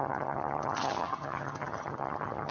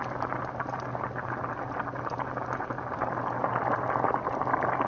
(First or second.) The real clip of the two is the second